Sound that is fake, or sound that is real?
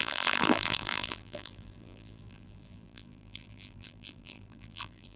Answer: fake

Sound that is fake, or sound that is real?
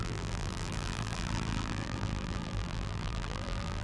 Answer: fake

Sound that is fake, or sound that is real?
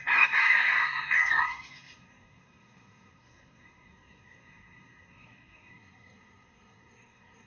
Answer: fake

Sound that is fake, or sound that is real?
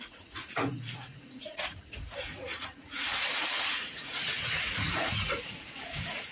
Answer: fake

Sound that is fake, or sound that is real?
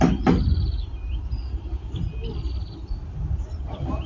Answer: real